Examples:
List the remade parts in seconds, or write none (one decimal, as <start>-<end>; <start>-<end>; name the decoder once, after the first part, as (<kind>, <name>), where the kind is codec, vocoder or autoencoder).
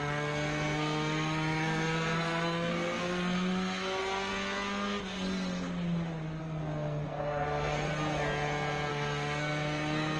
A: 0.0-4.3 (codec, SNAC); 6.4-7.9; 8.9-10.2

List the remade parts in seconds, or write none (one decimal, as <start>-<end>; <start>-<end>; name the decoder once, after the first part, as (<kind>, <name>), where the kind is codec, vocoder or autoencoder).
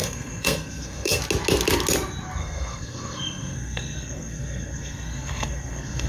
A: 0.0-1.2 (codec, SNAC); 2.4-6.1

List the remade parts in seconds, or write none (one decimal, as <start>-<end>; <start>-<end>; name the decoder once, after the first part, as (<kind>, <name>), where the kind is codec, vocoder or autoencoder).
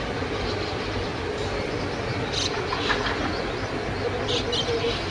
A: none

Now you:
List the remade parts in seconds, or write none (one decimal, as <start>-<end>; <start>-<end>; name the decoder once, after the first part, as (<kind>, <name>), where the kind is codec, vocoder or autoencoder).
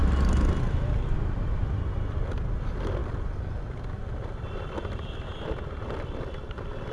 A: none